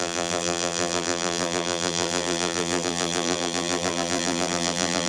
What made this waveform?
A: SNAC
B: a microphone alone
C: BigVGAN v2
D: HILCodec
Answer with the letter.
C